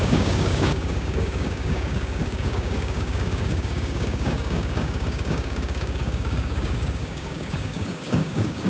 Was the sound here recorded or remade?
remade